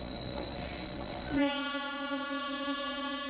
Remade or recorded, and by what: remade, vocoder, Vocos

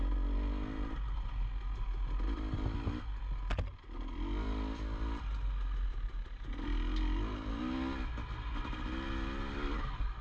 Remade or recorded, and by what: recorded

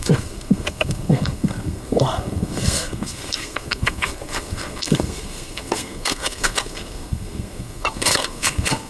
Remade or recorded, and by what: remade, codec, SNAC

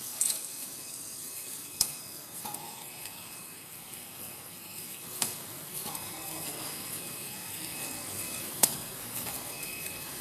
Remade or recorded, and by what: remade, codec, SNAC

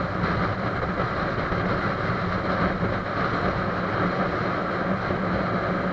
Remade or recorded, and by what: recorded